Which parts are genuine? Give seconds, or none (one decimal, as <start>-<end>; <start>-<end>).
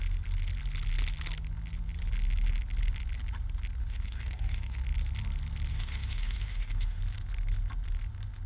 0.0-3.8; 4.8-5.7; 7.0-8.5